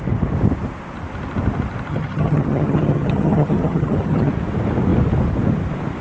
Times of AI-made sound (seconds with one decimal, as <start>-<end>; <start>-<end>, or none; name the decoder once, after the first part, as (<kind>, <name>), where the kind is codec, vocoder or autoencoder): 1.9-4.3 (vocoder, HiFi-GAN)